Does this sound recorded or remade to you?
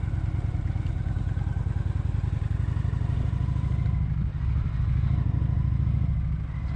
recorded